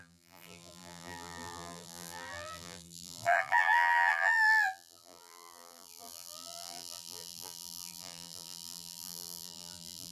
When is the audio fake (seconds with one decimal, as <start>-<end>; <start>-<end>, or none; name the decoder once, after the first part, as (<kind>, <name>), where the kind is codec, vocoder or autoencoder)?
0.0-10.1 (vocoder, BigVGAN v2)